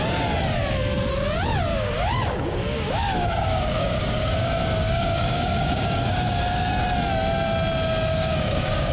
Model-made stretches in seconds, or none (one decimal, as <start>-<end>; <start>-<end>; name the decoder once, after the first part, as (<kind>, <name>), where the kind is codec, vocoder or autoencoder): 1.7-6.7 (codec, DAC); 8.1-8.9

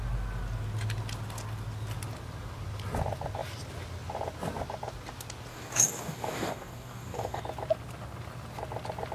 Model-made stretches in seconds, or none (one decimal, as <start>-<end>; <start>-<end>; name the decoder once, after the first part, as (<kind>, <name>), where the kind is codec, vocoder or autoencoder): 5.5-7.4 (codec, DAC)

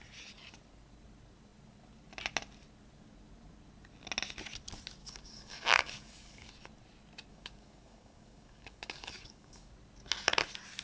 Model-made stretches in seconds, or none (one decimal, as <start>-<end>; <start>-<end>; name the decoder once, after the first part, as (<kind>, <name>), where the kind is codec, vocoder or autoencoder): 5.0-6.5 (codec, DAC); 7.3-9.7

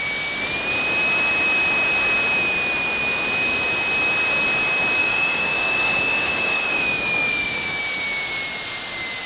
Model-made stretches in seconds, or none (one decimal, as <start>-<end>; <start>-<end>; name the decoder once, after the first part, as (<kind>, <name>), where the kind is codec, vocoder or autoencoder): 5.0-7.8 (codec, DAC)

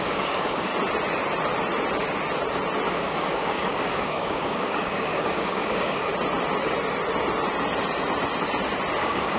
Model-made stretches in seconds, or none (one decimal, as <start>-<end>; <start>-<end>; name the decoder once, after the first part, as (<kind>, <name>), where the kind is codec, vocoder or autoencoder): 0.0-0.7 (codec, DAC); 2.9-6.1; 9.0-9.4

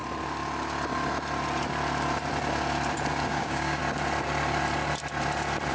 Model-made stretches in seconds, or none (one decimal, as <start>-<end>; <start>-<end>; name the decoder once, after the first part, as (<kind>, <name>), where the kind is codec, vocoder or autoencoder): 3.3-3.8 (codec, DAC)